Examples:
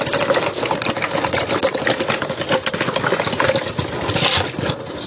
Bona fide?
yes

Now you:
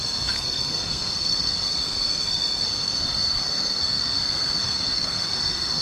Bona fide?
no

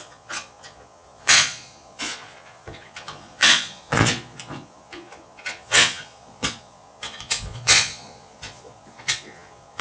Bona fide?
no